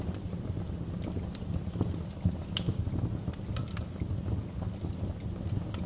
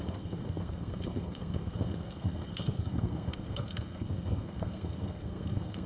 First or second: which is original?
first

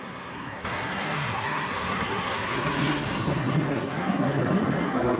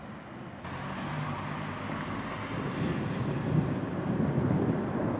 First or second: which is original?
second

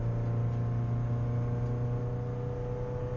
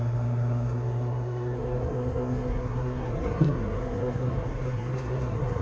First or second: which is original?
first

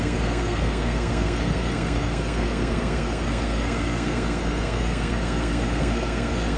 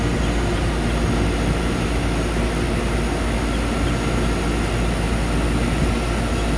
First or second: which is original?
second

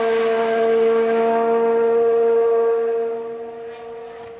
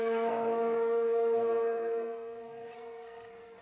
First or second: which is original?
first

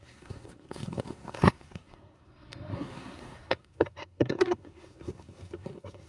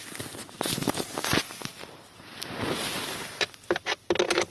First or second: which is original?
second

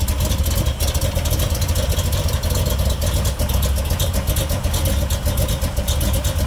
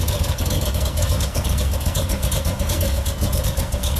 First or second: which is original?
first